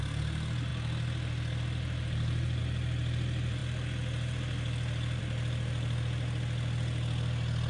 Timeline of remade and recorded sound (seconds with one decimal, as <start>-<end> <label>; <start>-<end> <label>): 0.0-7.7 recorded